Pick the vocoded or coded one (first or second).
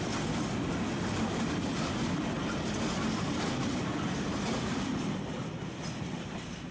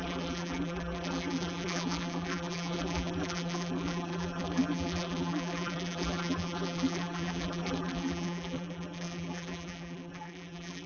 second